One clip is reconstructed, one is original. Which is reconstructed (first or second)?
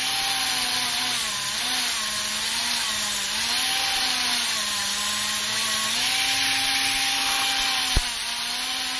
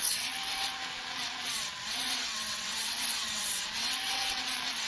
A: second